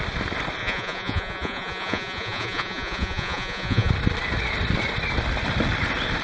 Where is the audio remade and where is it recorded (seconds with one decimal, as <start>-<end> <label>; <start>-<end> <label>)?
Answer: 0.0-0.6 recorded; 0.6-3.9 remade; 3.9-6.2 recorded